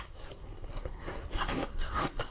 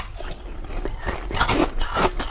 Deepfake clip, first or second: first